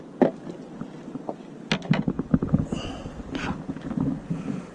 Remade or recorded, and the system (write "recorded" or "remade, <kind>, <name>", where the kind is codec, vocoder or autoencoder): recorded